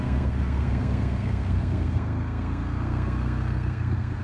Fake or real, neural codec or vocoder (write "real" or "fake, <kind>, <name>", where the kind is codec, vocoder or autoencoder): fake, codec, SNAC